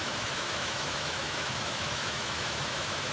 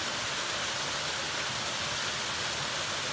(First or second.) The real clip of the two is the second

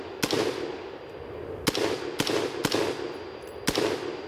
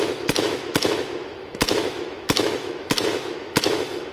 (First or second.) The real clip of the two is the first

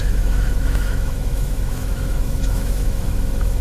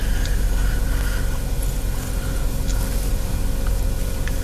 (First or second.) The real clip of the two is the second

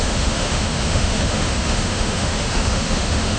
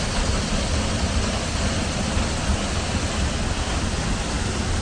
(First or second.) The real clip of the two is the second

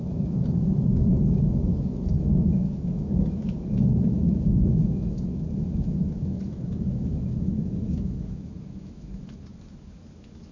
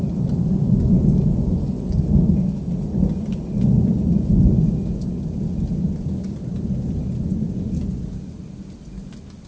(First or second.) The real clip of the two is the second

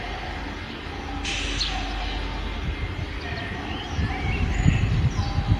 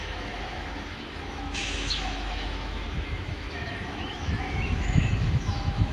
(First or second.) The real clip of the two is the first